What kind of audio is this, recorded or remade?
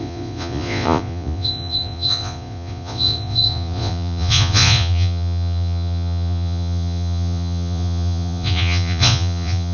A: remade